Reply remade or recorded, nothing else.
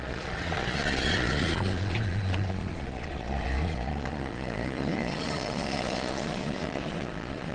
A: remade